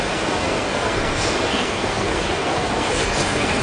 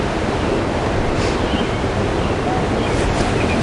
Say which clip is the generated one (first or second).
first